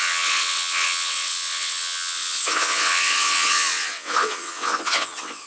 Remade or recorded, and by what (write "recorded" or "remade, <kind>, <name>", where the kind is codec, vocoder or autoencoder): remade, vocoder, WaveNeXt